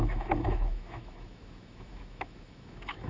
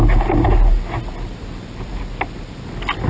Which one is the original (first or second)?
second